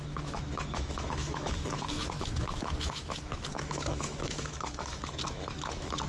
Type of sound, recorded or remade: remade